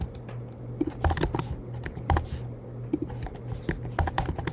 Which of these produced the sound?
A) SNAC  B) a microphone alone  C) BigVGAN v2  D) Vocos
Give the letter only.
B